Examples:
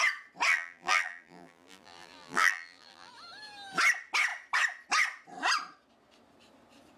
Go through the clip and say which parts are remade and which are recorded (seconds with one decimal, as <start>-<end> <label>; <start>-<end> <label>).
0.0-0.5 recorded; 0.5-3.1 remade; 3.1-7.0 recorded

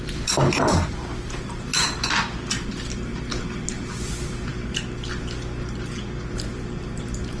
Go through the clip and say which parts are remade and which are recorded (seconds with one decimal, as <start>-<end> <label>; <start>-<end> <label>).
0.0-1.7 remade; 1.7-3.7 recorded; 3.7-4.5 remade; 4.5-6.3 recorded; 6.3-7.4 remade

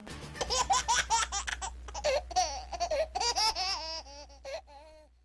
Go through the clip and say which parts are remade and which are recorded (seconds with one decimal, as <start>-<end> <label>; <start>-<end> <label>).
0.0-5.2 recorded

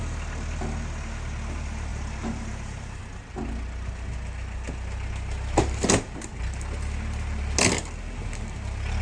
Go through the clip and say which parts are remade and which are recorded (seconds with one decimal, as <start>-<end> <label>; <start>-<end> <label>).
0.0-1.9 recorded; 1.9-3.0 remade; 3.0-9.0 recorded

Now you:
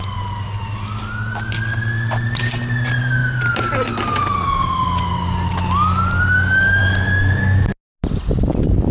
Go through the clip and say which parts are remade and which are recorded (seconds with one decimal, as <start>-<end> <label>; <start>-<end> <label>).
0.0-8.9 recorded